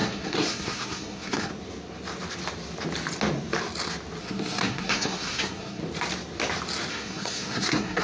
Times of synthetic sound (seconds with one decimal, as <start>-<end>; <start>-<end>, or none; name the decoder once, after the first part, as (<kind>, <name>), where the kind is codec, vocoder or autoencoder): 0.0-1.5 (codec, SNAC); 4.2-5.8; 6.9-8.0

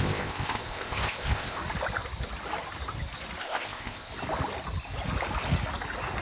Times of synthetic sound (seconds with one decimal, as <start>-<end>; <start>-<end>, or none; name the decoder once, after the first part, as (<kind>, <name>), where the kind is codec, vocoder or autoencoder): 0.0-1.6 (codec, ZipCodec); 3.4-4.1